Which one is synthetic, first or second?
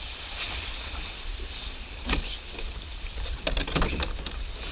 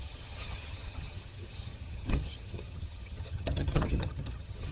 second